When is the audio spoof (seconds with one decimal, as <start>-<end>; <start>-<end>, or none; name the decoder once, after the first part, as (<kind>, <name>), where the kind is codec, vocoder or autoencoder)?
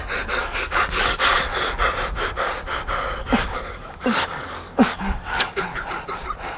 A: 0.4-1.2 (codec, DAC); 3.2-5.8